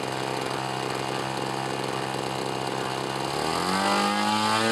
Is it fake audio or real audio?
real